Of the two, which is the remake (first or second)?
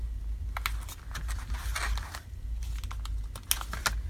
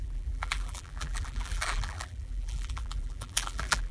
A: second